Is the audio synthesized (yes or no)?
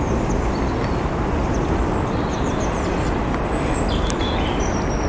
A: no